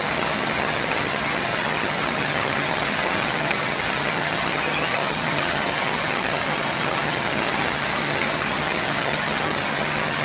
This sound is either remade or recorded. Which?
remade